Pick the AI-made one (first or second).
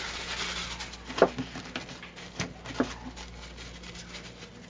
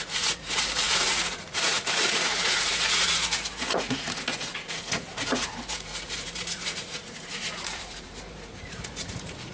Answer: second